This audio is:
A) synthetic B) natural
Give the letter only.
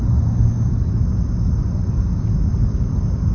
B